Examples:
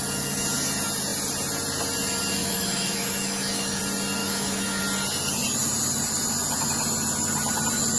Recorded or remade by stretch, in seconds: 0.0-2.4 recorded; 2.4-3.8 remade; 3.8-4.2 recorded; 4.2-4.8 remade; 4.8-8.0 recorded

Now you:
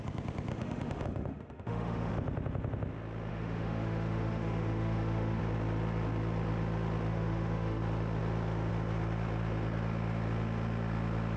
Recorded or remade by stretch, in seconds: 0.0-0.5 recorded; 0.5-2.1 remade; 2.1-3.3 recorded; 3.3-5.4 remade; 5.4-7.1 recorded; 7.1-7.8 remade; 7.8-11.4 recorded

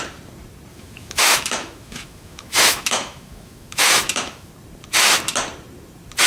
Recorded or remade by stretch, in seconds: 0.0-0.7 recorded; 0.7-4.5 remade; 4.5-6.3 recorded

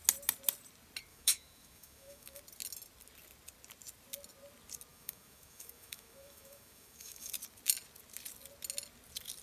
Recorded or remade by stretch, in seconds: 0.0-1.1 recorded; 1.1-2.4 remade; 2.4-4.9 recorded; 4.9-7.3 remade; 7.3-9.4 recorded

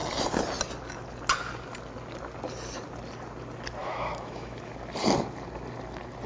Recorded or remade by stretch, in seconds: 0.0-3.8 recorded; 3.8-4.7 remade; 4.7-6.3 recorded

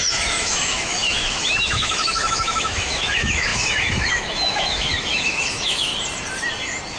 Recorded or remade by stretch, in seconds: 0.0-5.9 remade; 5.9-7.0 recorded

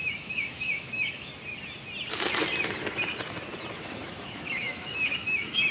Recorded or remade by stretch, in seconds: 0.0-1.3 remade; 1.3-3.8 recorded; 3.8-5.7 remade

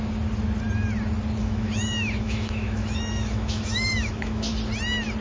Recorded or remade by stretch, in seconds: 0.0-1.4 recorded; 1.4-4.5 remade; 4.5-5.2 recorded